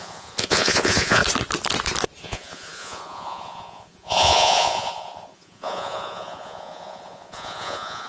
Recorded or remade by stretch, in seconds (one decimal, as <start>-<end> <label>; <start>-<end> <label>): 0.0-1.2 remade; 1.2-2.2 recorded; 2.2-8.1 remade